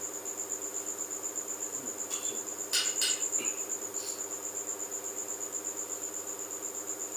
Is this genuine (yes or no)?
yes